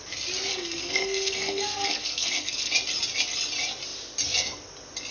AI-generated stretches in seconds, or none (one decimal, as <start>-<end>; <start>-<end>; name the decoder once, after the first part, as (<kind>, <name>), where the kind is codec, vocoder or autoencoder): 0.5-2.7 (codec, SNAC)